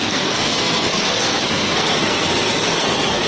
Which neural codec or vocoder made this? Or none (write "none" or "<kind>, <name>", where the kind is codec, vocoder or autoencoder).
codec, SNAC